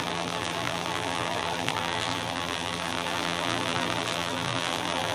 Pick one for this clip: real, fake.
fake